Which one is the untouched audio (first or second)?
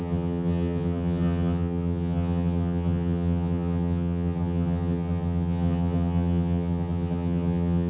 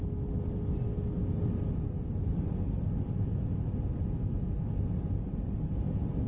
second